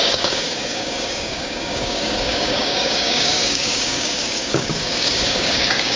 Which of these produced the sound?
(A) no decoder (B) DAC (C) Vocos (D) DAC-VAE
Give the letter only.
B